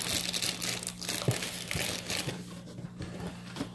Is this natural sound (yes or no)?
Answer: yes